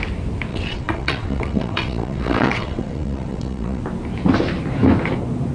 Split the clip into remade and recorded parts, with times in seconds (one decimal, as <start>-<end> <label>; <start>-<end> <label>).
0.0-0.5 recorded; 0.5-3.8 remade; 3.8-5.5 recorded